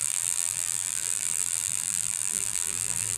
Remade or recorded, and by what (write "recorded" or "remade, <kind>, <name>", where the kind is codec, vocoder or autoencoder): remade, vocoder, BigVGAN v2